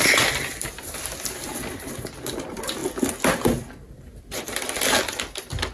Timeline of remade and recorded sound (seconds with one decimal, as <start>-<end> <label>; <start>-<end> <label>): 0.0-5.7 recorded